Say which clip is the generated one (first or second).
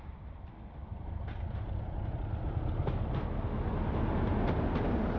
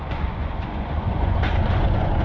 second